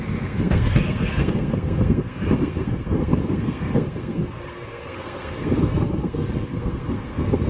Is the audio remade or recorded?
remade